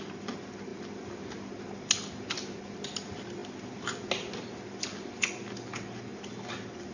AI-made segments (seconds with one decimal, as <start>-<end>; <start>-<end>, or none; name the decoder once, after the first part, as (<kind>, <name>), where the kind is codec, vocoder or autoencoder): none